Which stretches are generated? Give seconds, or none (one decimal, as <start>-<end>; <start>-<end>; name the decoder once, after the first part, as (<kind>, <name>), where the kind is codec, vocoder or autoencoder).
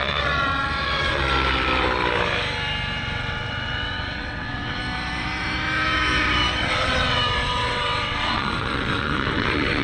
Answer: 0.0-1.2 (vocoder, WaveNeXt); 3.0-4.8; 6.6-9.8